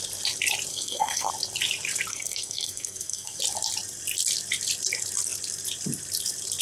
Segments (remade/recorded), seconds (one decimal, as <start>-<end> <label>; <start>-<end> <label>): 0.0-0.7 recorded; 0.7-1.3 remade; 1.3-2.1 recorded; 2.1-3.4 remade; 3.4-6.6 recorded